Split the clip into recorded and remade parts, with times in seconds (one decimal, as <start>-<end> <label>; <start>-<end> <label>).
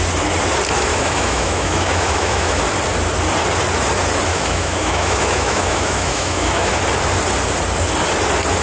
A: 0.0-0.9 recorded; 0.9-2.6 remade; 2.6-4.3 recorded; 4.3-6.8 remade; 6.8-8.6 recorded